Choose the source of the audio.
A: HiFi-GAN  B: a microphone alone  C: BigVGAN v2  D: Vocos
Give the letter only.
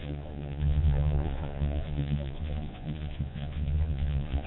D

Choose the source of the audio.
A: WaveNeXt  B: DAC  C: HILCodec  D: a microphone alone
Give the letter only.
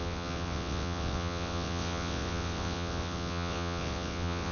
A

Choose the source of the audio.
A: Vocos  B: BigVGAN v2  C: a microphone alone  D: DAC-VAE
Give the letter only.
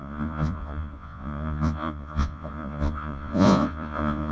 A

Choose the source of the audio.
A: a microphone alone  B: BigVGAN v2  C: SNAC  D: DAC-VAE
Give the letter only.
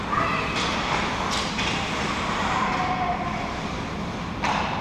A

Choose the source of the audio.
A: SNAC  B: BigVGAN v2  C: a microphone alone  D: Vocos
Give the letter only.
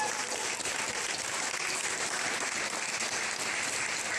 C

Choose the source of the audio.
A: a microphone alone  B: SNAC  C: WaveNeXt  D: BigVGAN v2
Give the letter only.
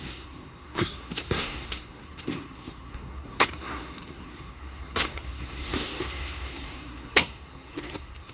B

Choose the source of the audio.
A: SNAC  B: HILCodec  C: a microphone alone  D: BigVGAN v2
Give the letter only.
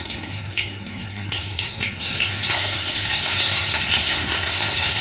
A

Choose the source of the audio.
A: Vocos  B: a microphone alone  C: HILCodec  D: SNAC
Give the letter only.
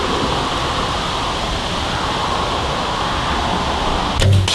B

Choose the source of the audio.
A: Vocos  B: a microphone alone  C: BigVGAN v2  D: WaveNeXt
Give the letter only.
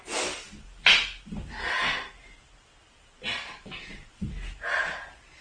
B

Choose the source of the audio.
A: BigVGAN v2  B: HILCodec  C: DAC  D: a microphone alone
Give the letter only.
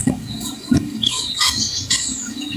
C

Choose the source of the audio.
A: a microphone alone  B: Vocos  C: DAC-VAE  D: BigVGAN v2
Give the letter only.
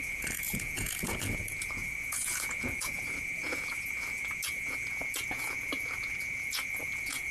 B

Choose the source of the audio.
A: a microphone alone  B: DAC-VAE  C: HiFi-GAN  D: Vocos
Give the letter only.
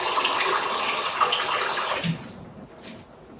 A